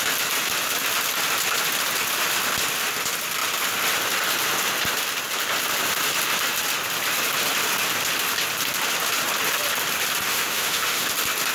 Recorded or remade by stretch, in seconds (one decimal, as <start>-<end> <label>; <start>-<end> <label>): 0.0-10.3 recorded; 10.3-11.0 remade; 11.0-11.5 recorded